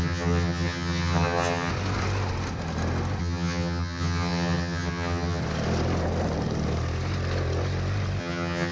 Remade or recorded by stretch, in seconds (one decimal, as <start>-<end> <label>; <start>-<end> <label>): 0.0-1.7 remade; 1.7-3.2 recorded; 3.2-5.4 remade; 5.4-8.2 recorded; 8.2-8.7 remade